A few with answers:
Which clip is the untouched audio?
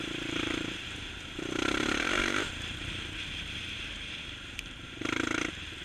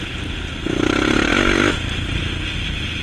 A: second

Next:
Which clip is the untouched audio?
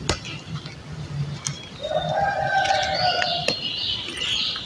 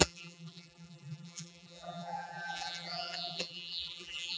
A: first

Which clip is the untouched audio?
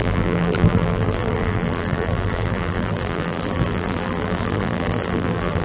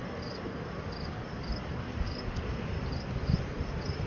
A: second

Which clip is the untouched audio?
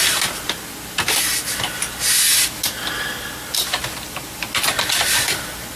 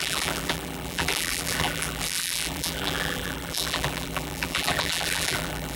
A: first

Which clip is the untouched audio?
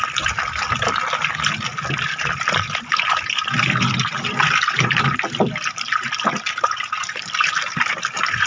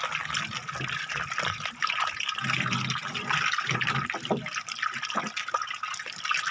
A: second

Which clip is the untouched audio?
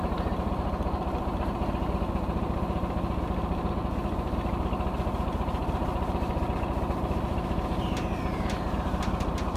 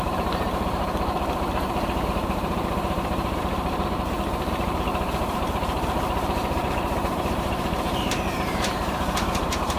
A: first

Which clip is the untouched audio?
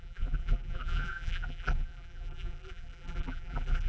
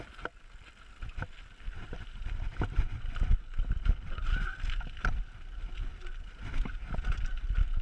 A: second